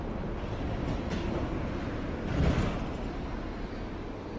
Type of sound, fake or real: real